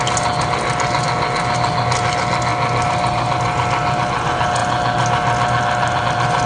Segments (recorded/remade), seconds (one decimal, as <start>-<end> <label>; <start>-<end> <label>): 0.0-6.5 recorded